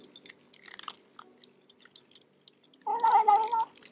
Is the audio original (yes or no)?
yes